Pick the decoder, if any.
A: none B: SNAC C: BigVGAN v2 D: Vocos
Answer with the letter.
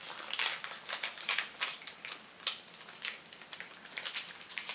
A